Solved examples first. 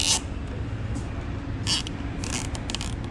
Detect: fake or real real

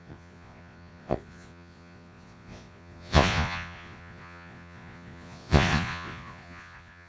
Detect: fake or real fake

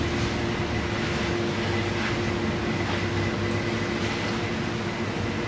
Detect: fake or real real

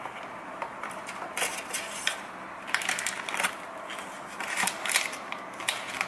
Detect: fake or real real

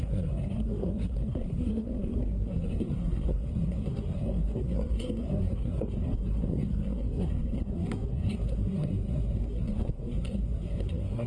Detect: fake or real fake